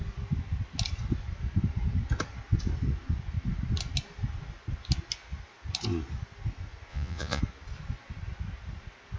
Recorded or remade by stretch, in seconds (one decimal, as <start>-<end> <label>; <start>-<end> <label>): 0.0-6.9 recorded; 6.9-7.4 remade; 7.4-9.2 recorded